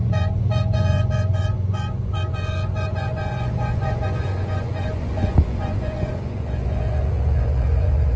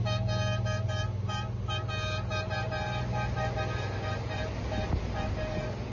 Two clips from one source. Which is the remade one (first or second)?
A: first